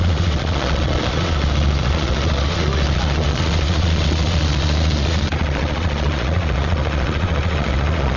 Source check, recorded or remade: remade